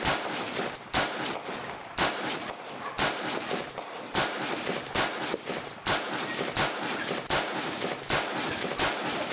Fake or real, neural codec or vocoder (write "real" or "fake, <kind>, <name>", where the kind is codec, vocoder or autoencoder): real